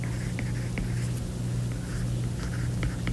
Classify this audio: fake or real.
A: real